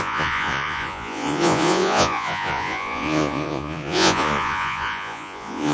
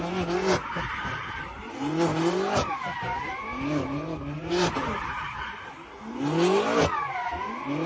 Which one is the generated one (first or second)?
first